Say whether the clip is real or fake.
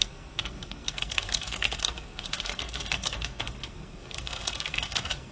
fake